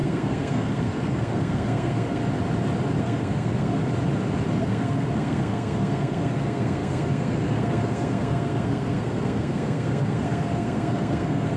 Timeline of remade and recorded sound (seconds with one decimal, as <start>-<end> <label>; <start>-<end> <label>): 0.0-2.2 remade; 2.2-3.0 recorded; 3.0-3.8 remade; 3.8-4.6 recorded; 4.6-11.6 remade